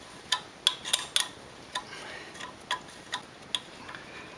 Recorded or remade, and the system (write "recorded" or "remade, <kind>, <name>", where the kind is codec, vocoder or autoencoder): recorded